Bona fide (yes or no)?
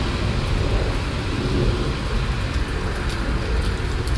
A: yes